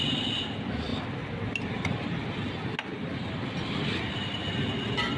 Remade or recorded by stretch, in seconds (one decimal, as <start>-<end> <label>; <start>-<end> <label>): 0.0-5.2 recorded